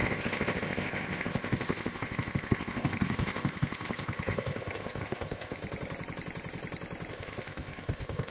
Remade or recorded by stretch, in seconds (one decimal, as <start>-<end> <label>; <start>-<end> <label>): 0.0-5.6 remade; 5.6-7.1 recorded; 7.1-8.3 remade